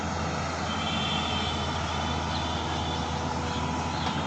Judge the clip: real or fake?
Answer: real